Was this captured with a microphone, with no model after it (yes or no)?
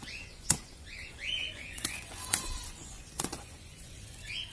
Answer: no